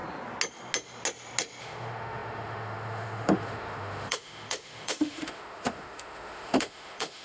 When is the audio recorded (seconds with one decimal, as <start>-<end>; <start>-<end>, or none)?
0.0-1.6